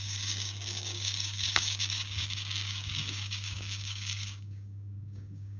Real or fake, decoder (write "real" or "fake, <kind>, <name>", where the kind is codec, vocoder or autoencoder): fake, codec, DAC